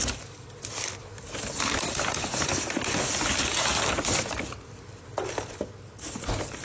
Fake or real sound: real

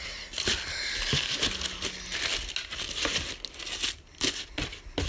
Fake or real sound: real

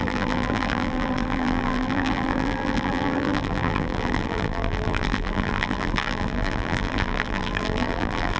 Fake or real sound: fake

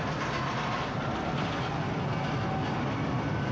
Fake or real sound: real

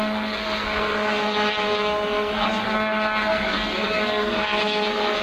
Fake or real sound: fake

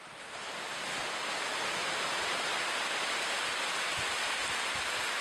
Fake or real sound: real